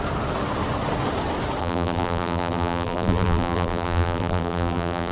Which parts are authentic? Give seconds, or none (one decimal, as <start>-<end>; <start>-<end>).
0.0-1.6